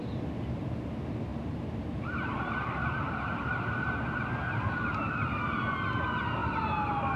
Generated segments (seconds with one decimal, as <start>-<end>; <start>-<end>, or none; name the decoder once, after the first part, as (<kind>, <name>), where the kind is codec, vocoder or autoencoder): 1.3-5.6 (vocoder, BigVGAN v2)